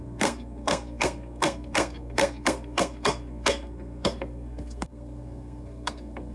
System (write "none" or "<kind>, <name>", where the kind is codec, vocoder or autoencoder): codec, SNAC